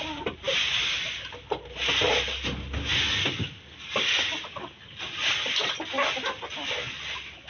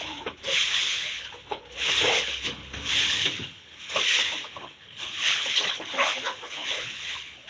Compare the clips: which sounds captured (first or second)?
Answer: first